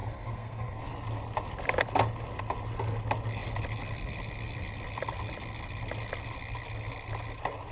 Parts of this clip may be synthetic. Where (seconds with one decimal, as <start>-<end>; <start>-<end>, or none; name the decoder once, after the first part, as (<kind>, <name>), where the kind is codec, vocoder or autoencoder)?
0.0-0.8 (codec, SNAC)